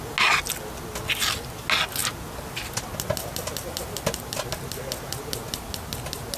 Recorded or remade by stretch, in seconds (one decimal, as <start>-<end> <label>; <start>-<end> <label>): 0.0-6.4 recorded